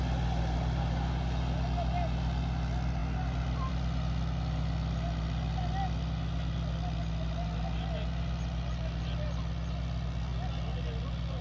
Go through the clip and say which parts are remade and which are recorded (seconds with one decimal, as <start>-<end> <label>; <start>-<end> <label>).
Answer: 0.0-11.4 recorded